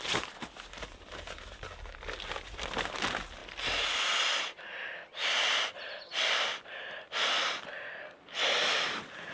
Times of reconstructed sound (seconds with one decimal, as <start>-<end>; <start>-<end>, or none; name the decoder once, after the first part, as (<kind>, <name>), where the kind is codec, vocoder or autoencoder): none